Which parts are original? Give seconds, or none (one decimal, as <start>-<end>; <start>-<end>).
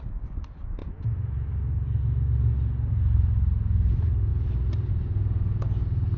0.0-6.2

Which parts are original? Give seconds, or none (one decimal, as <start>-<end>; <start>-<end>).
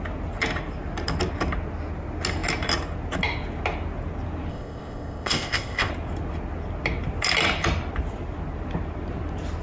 0.0-4.5; 5.9-9.6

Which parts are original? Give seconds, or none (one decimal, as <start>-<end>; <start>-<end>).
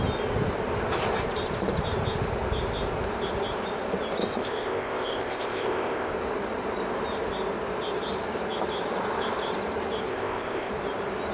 0.0-4.2; 6.1-10.1; 10.7-11.3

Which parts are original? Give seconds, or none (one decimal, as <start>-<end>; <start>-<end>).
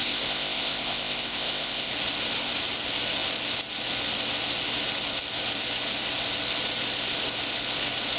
1.9-8.2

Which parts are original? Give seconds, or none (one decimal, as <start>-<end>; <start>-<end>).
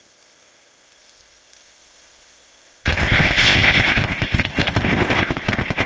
none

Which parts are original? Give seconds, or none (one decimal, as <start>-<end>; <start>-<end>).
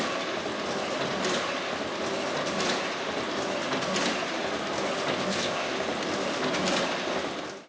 0.0-5.1; 5.7-7.7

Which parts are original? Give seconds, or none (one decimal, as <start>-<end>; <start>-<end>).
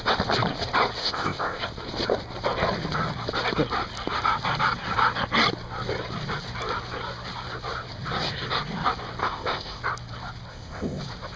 0.0-1.0; 1.6-9.2; 9.8-10.5; 11.0-11.4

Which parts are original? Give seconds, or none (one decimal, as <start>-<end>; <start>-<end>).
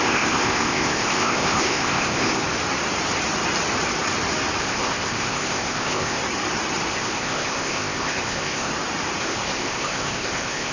2.4-4.6; 6.2-6.9; 8.7-9.2